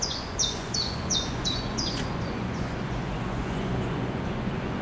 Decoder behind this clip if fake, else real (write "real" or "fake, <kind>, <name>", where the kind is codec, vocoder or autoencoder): fake, vocoder, Vocos